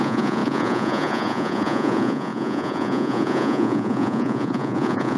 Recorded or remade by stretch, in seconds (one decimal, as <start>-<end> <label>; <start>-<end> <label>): 0.0-5.2 remade